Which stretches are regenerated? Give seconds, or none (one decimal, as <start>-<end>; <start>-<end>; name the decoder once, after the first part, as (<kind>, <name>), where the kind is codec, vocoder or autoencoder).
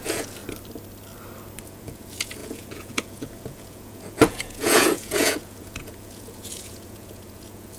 0.0-0.4 (vocoder, Vocos); 1.6-7.8